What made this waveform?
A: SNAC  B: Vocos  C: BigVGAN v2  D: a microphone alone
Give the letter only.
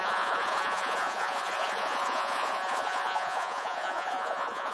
B